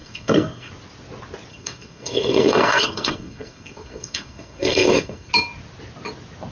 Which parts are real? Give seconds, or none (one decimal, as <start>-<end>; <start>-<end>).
0.7-1.5; 5.3-6.5